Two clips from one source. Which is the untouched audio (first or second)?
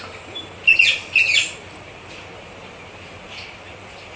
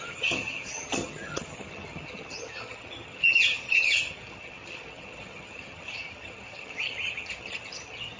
first